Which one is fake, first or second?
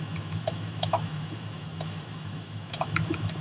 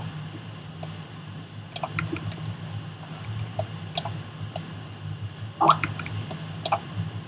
first